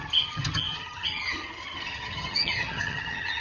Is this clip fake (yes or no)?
yes